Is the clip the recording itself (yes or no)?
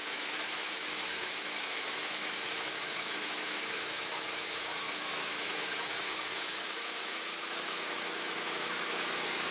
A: no